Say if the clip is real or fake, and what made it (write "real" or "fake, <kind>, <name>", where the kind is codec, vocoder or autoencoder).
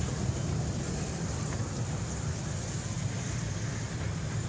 real